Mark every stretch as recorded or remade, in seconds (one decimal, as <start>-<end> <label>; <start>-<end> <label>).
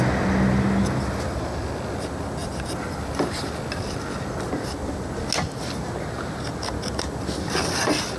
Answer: 0.0-2.4 recorded; 2.4-3.5 remade; 3.5-8.2 recorded